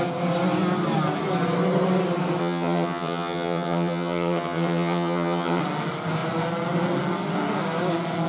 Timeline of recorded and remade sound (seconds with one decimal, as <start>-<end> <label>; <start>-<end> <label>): 0.0-2.4 recorded; 2.4-5.6 remade; 5.6-8.3 recorded